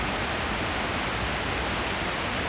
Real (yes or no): yes